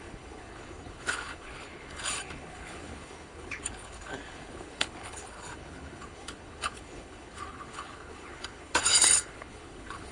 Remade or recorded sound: remade